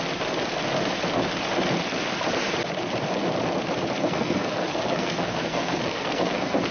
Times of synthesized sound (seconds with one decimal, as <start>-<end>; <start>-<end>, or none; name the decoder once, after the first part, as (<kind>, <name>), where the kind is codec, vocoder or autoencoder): 4.0-6.7 (codec, SNAC)